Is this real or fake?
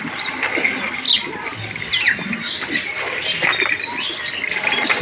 real